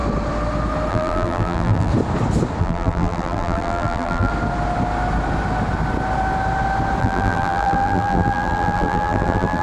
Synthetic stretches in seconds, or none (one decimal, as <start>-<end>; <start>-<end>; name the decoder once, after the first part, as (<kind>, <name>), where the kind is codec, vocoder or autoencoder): 0.9-1.9 (vocoder, BigVGAN v2); 2.6-4.3; 7.0-9.6